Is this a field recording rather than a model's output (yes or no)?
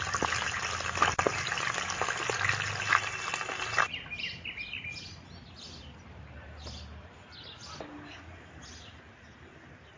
yes